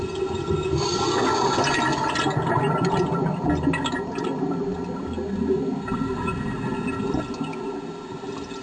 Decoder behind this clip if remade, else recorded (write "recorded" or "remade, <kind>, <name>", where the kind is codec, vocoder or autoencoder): recorded